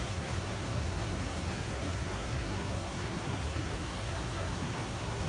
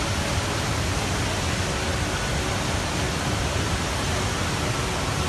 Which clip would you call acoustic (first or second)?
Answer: second